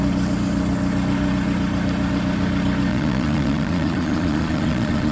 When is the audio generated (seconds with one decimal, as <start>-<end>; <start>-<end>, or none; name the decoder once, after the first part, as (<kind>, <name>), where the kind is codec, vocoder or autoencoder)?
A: 2.9-5.1 (vocoder, Vocos)